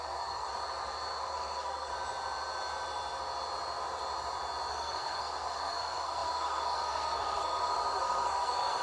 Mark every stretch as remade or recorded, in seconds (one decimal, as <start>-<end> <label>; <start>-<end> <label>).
0.0-0.5 remade; 0.5-1.3 recorded; 1.3-1.9 remade; 1.9-4.7 recorded; 4.7-8.8 remade